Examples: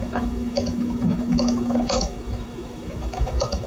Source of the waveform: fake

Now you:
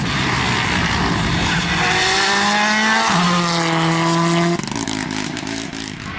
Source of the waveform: real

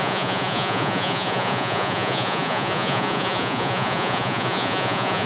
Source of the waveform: fake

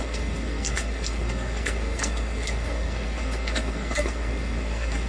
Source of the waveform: fake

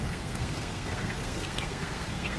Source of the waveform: fake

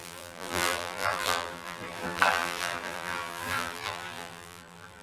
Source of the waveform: fake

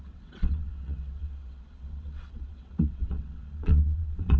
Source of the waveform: fake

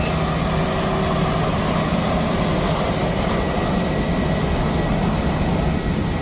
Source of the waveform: real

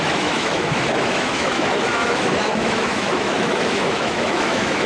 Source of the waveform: fake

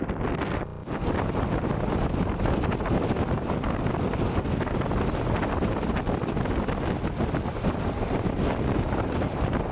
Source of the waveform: real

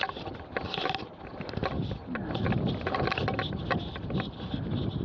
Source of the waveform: real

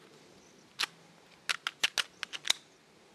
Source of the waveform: real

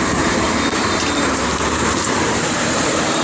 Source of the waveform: fake